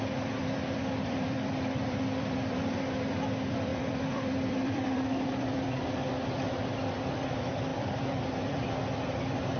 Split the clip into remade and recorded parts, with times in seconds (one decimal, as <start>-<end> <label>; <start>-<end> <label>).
0.0-9.6 remade